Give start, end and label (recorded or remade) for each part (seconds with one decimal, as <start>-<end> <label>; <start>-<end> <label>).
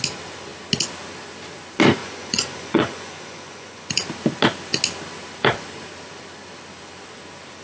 0.0-2.0 recorded; 2.0-3.9 remade; 3.9-7.6 recorded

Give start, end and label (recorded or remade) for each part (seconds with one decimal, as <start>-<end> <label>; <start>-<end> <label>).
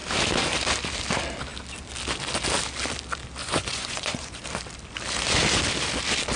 0.0-3.4 recorded; 3.4-4.4 remade; 4.4-6.4 recorded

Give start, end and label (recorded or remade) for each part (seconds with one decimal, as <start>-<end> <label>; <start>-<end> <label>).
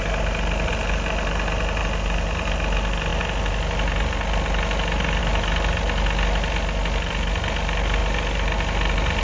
0.0-9.2 recorded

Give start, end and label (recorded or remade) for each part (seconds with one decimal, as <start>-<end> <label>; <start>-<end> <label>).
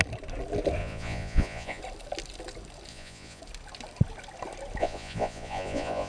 0.0-0.8 recorded; 0.8-1.8 remade; 1.8-2.9 recorded; 2.9-3.4 remade; 3.4-4.8 recorded; 4.8-6.1 remade